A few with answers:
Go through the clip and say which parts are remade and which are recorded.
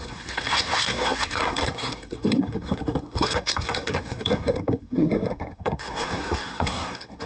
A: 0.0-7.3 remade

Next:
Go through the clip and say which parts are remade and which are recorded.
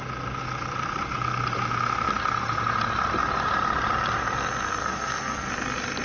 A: 0.0-4.8 recorded; 4.8-5.5 remade; 5.5-6.0 recorded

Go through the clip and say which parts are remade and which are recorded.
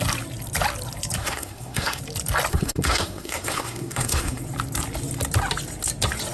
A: 0.0-1.2 recorded; 1.2-2.0 remade; 2.0-2.5 recorded; 2.5-4.4 remade; 4.4-6.3 recorded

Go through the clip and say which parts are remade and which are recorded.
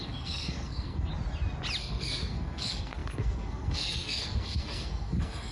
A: 0.0-1.1 remade; 1.1-1.8 recorded; 1.8-5.5 remade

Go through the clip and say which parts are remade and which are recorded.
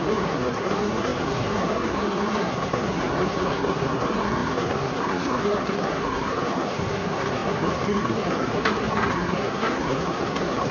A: 0.0-10.7 remade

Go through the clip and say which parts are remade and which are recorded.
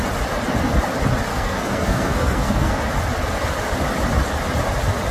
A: 0.0-1.3 recorded; 1.3-2.8 remade; 2.8-5.1 recorded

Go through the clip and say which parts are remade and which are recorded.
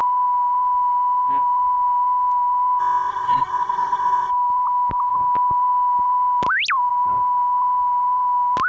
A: 0.0-2.8 recorded; 2.8-4.3 remade; 4.3-8.7 recorded